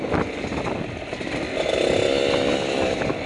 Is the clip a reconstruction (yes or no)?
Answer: no